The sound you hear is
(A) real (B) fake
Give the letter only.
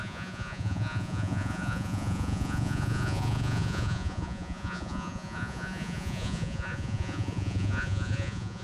B